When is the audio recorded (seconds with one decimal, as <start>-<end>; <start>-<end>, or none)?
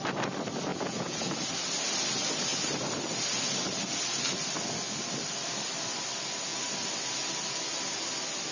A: 0.0-0.7; 1.2-8.5